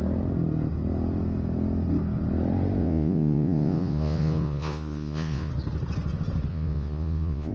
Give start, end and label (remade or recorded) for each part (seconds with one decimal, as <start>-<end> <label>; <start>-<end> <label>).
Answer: 0.0-2.8 recorded; 2.8-5.5 remade; 5.5-6.5 recorded; 6.5-7.5 remade